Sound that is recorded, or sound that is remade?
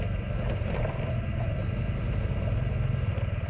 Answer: recorded